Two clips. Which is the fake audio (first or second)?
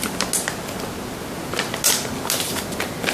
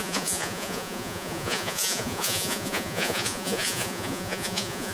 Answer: second